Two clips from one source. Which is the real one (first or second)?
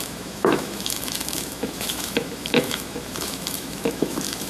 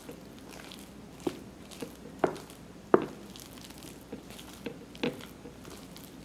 second